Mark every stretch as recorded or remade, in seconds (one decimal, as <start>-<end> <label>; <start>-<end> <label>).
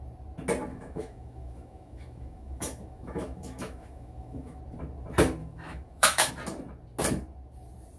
0.0-0.7 recorded; 0.7-4.6 remade; 4.6-5.4 recorded; 5.4-6.3 remade; 6.3-8.0 recorded